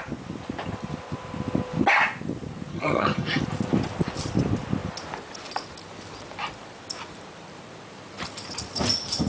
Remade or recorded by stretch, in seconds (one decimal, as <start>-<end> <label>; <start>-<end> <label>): 0.0-2.7 recorded; 2.7-3.4 remade; 3.4-9.3 recorded

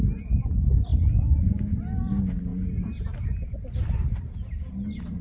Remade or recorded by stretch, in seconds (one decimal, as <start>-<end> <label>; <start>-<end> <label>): 0.0-5.2 recorded

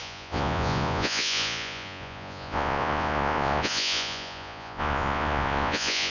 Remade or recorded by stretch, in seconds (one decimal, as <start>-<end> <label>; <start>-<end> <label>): 0.0-6.1 remade

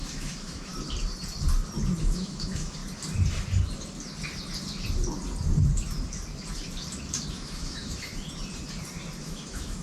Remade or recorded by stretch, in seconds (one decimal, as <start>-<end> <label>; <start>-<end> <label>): 0.0-0.7 remade; 0.7-2.0 recorded; 2.0-2.8 remade; 2.8-7.3 recorded; 7.3-8.1 remade; 8.1-9.2 recorded; 9.2-9.8 remade

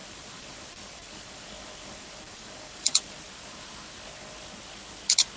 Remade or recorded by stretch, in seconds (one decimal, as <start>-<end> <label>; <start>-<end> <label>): 0.0-3.2 remade; 3.2-5.4 recorded

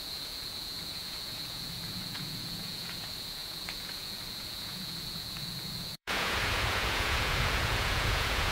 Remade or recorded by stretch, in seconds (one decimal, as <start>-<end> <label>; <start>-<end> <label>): 0.0-8.5 remade